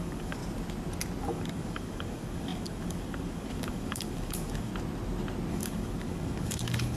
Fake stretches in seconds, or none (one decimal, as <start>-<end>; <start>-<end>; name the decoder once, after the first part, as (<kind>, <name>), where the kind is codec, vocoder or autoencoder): 0.0-0.4 (codec, DAC); 1.2-4.7; 5.5-7.0